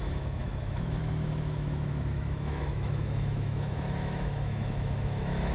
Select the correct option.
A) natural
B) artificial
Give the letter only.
B